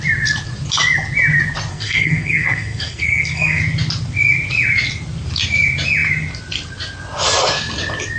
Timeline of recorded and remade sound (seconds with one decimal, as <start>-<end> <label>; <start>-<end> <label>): 0.0-1.7 recorded; 1.7-3.6 remade; 3.6-8.2 recorded